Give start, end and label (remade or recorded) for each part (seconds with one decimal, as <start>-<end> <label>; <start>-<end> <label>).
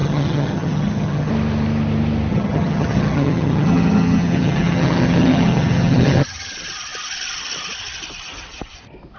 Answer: 0.0-1.3 remade; 1.3-2.3 recorded; 2.3-6.5 remade; 6.5-9.2 recorded